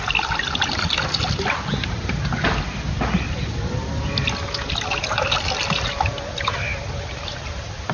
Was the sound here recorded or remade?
recorded